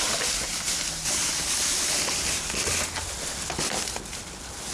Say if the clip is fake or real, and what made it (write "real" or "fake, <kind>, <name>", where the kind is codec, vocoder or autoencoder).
real